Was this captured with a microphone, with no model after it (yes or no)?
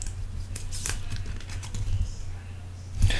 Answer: yes